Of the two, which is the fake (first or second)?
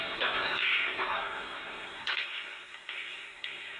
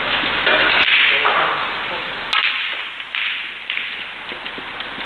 first